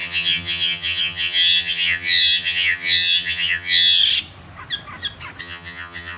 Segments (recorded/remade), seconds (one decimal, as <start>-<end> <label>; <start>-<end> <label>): 0.0-4.0 remade; 4.0-5.4 recorded; 5.4-6.2 remade

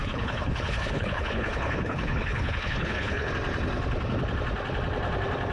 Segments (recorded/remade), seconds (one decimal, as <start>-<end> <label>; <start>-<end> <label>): 0.0-3.3 remade; 3.3-5.5 recorded

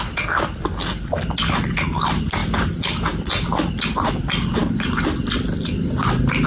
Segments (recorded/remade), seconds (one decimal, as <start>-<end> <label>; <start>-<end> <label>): 0.0-2.4 recorded; 2.4-3.3 remade; 3.3-6.5 recorded